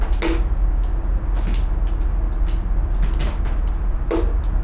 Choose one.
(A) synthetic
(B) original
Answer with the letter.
B